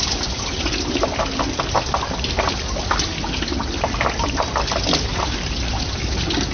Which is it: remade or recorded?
recorded